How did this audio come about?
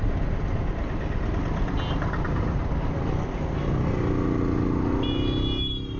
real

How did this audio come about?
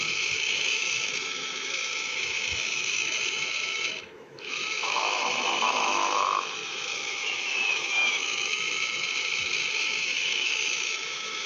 fake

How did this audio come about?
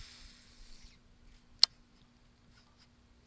real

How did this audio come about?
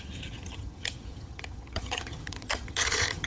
fake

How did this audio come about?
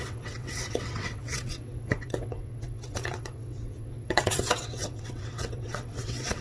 fake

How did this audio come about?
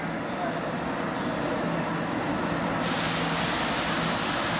real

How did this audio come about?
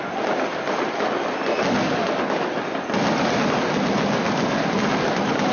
real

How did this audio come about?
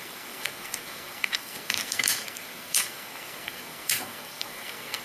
fake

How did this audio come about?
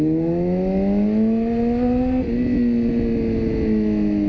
real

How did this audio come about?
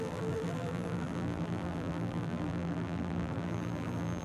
fake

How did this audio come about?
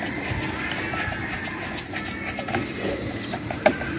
real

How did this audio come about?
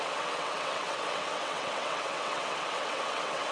fake